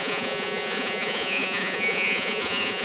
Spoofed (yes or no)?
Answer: yes